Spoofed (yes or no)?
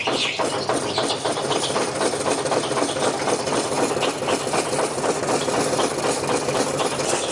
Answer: no